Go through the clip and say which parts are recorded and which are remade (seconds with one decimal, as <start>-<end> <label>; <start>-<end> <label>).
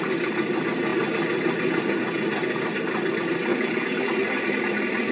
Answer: 0.0-3.5 recorded; 3.5-4.2 remade; 4.2-5.1 recorded